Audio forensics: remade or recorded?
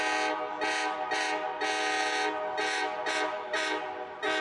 recorded